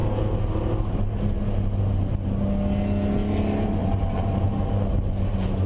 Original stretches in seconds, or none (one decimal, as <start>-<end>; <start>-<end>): 0.0-3.8